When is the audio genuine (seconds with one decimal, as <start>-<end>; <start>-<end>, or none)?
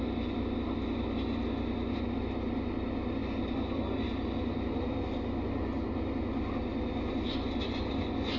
0.0-8.4